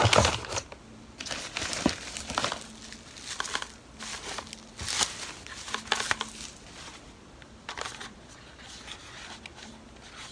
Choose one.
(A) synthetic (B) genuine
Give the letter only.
B